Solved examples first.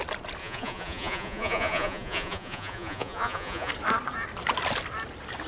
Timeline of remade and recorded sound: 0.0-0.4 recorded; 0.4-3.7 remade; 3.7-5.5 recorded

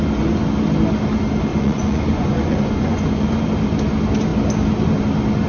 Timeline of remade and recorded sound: 0.0-1.5 recorded; 1.5-3.4 remade; 3.4-5.5 recorded

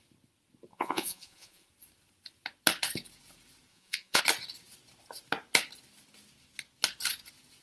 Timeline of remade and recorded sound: 0.0-0.7 recorded; 0.7-1.7 remade; 1.7-3.7 recorded; 3.7-4.2 remade; 4.2-7.6 recorded

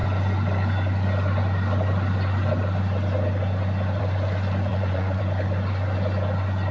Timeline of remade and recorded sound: 0.0-4.7 recorded; 4.7-5.2 remade; 5.2-6.7 recorded

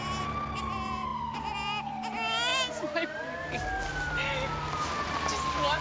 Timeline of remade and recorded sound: 0.0-5.8 recorded

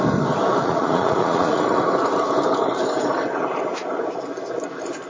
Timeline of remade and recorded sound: 0.0-0.6 recorded; 0.6-1.8 remade; 1.8-5.1 recorded

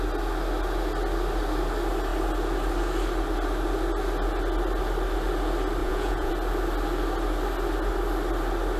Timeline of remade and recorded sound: 0.0-5.8 recorded; 5.8-6.3 remade; 6.3-8.8 recorded